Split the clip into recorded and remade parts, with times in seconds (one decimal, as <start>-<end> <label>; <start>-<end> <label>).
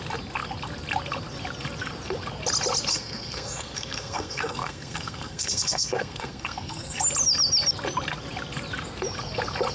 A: 0.0-2.9 recorded; 2.9-7.0 remade; 7.0-9.7 recorded